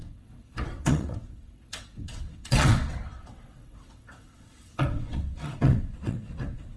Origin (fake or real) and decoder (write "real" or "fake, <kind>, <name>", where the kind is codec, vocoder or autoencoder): fake, vocoder, WaveNeXt